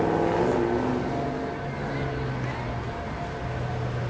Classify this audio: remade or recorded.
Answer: recorded